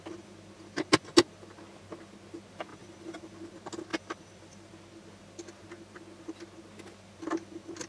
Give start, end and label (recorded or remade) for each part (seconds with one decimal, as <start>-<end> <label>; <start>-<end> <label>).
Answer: 0.0-2.7 recorded; 2.7-3.2 remade; 3.2-3.9 recorded; 3.9-4.7 remade; 4.7-7.9 recorded